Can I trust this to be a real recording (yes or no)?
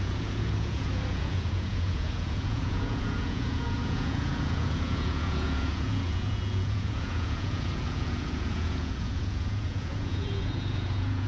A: no